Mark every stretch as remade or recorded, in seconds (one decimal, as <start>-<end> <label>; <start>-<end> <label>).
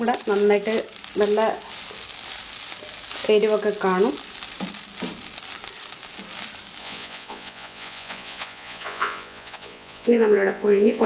0.0-6.8 recorded; 6.8-11.1 remade